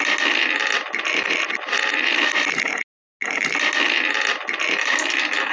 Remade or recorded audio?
recorded